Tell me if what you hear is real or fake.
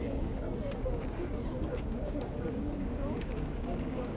fake